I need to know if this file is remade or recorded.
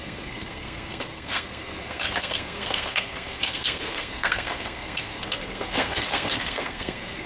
remade